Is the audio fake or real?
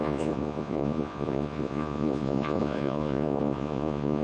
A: fake